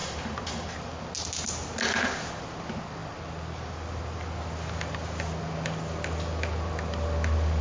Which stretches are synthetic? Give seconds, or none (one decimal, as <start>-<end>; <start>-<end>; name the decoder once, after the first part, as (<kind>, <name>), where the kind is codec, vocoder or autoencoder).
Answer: none